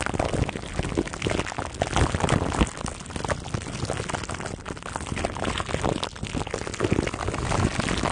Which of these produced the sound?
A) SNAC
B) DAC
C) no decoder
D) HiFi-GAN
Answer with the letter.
C